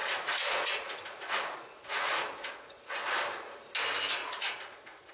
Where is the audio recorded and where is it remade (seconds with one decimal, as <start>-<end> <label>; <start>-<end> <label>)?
0.0-2.9 remade; 2.9-4.2 recorded; 4.2-5.1 remade